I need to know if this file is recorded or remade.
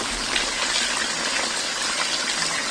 recorded